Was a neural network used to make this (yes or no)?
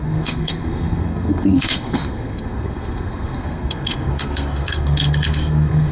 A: yes